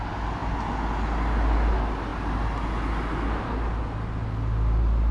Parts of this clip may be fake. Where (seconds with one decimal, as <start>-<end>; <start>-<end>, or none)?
none